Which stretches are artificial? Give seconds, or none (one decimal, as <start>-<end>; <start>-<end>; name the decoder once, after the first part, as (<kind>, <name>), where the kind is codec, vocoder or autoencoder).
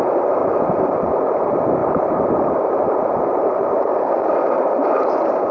0.4-1.1 (vocoder, BigVGAN v2); 1.8-4.5